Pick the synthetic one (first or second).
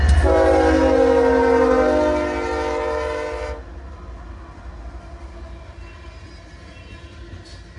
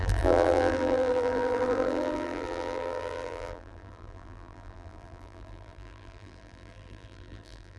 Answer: second